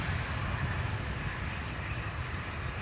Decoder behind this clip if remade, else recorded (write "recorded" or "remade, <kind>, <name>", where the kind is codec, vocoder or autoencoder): recorded